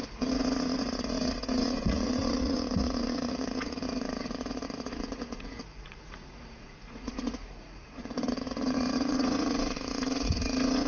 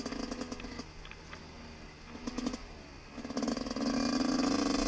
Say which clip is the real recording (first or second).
second